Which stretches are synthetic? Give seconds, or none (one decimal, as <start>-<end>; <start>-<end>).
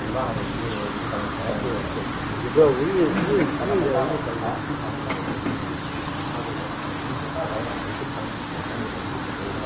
none